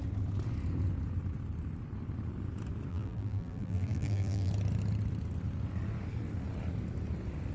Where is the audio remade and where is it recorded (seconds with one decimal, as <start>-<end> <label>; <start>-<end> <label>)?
0.0-2.9 recorded; 2.9-4.5 remade; 4.5-7.5 recorded